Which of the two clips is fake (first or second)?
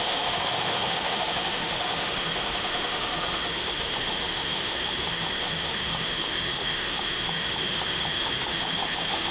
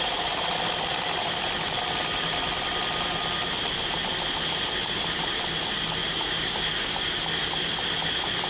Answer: first